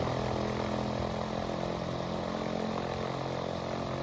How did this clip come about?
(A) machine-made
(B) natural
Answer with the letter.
B